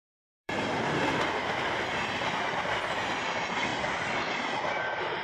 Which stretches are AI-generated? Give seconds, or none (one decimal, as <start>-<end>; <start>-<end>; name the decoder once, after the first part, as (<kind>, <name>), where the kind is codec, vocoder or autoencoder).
0.0-1.1 (vocoder, BigVGAN v2)